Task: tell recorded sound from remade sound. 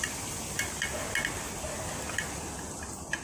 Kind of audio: recorded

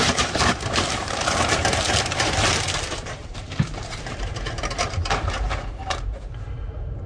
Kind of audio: remade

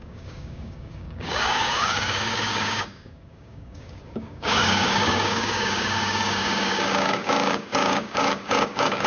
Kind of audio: remade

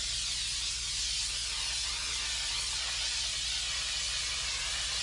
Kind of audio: recorded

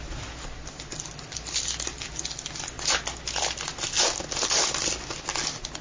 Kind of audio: recorded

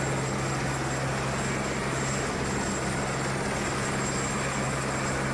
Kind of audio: recorded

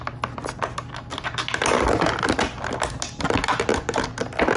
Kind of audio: recorded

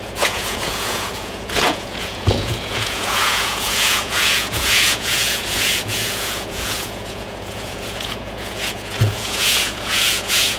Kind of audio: remade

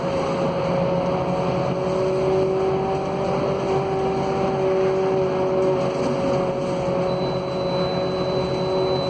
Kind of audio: recorded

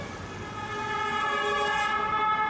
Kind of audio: recorded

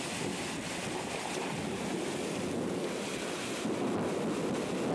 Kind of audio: recorded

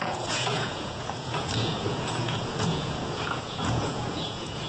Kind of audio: remade